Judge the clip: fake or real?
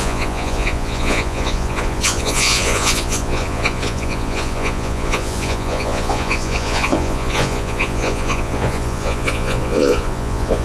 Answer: fake